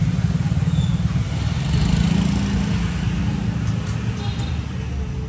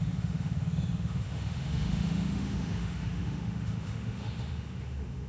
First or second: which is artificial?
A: second